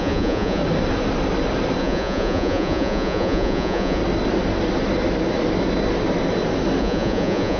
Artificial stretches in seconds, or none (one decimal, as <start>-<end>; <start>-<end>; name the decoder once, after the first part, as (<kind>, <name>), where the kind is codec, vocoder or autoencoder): 0.0-0.6 (vocoder, Vocos); 1.8-4.0; 6.8-7.6